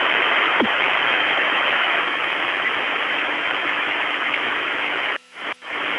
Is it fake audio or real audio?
fake